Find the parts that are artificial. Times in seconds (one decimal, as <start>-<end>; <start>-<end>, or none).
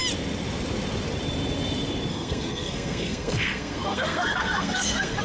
2.1-5.2